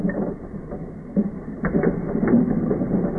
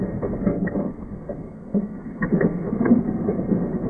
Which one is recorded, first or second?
first